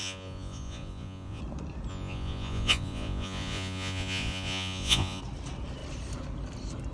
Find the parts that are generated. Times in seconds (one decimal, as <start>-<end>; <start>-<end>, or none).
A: 0.0-1.4; 1.9-5.2